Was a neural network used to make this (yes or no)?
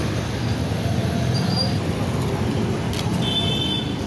no